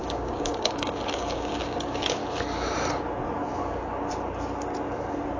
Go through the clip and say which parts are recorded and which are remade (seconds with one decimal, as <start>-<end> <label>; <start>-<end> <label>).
0.0-2.2 remade; 2.2-5.4 recorded